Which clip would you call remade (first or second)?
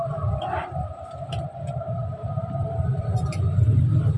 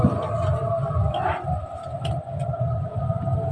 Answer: first